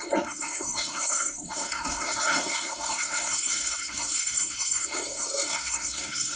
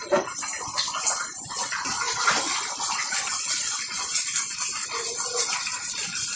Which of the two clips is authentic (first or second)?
second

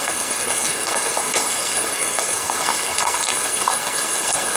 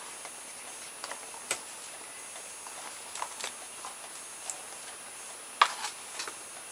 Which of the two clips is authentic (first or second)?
second